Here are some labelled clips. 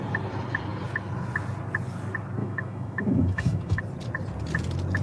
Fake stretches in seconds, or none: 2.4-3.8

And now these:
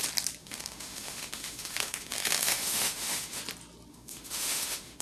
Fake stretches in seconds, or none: 0.4-3.4; 3.9-5.0

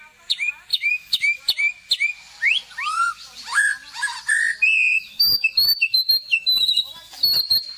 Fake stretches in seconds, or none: 0.7-1.4; 4.9-6.9